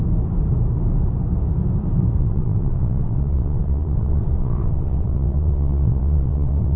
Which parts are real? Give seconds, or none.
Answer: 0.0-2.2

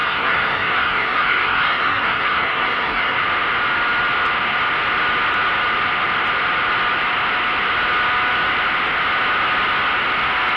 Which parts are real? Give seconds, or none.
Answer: 3.2-10.6

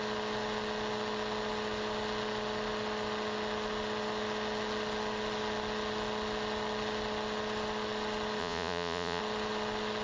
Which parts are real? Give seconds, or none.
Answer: 0.0-8.4; 9.2-10.0

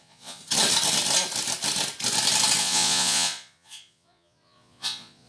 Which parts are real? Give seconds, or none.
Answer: 0.4-2.6

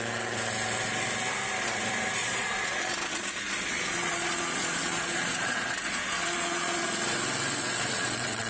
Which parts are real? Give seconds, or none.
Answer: 0.0-2.2; 7.1-7.6

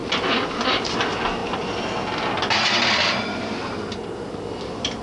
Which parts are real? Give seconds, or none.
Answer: 0.6-5.0

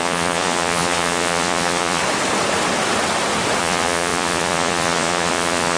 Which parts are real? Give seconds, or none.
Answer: 2.0-3.6